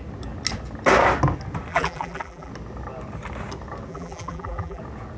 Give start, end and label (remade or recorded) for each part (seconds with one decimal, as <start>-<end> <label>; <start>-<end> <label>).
0.0-1.7 recorded; 1.7-2.5 remade; 2.5-3.9 recorded; 3.9-4.8 remade; 4.8-5.2 recorded